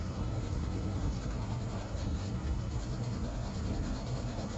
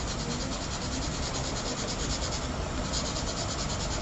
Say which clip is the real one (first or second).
second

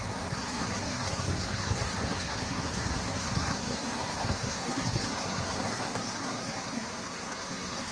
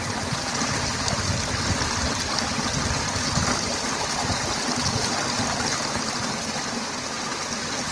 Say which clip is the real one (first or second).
second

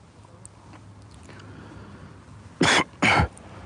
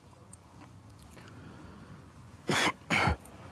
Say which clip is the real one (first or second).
first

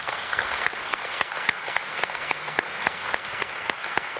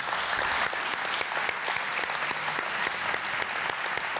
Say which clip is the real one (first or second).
second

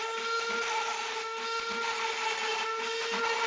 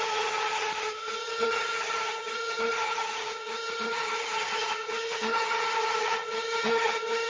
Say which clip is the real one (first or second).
first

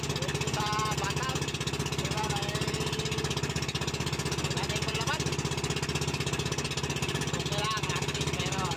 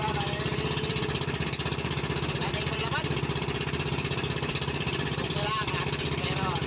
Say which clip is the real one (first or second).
first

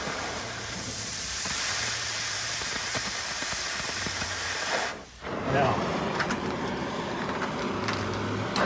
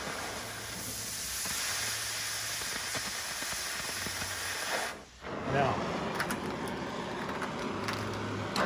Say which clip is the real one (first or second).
second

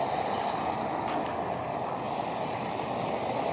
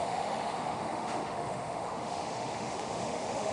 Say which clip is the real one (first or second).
first